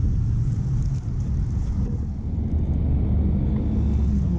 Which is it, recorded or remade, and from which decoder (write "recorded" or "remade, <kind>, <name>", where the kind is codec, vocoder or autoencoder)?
recorded